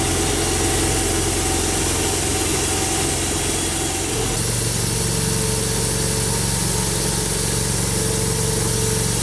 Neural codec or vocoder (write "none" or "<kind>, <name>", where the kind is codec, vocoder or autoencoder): none